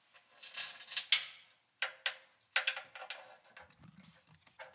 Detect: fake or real real